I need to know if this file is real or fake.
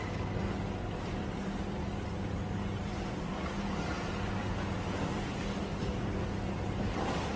real